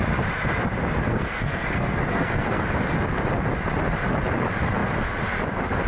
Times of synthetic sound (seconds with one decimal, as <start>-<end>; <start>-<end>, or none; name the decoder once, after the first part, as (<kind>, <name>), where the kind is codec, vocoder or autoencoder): 1.0-2.6 (codec, SNAC)